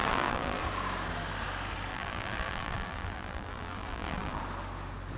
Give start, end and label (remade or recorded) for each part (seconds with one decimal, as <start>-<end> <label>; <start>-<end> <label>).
0.0-0.6 remade; 0.6-1.9 recorded; 1.9-4.4 remade; 4.4-5.2 recorded